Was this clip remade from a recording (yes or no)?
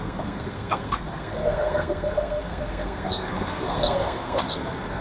yes